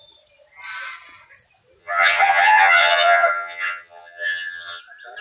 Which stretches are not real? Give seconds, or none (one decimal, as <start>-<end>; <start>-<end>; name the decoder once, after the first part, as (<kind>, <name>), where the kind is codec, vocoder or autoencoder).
1.8-4.8 (vocoder, HiFi-GAN)